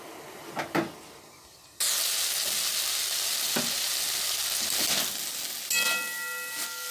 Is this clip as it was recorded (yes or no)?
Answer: yes